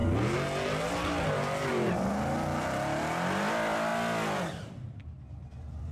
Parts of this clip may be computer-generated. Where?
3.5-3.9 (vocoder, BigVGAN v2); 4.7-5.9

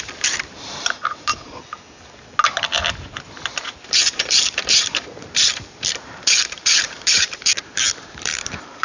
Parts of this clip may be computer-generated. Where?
0.0-1.3 (vocoder, BigVGAN v2); 3.9-8.8

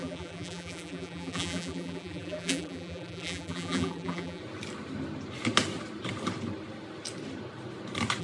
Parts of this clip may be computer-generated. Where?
0.0-4.4 (vocoder, BigVGAN v2)

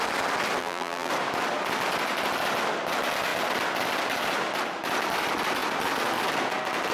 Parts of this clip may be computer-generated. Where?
0.6-1.1 (vocoder, BigVGAN v2)

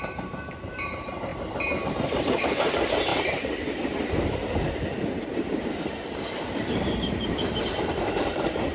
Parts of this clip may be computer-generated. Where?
0.0-8.7 (vocoder, BigVGAN v2)